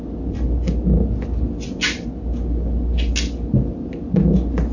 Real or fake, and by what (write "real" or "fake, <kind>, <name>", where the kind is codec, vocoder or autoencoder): real